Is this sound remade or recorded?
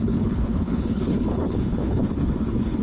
remade